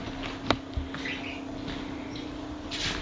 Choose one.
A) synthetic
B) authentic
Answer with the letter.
B